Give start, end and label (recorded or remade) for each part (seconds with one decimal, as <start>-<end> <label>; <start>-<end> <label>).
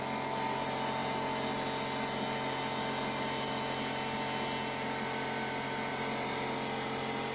0.0-7.3 recorded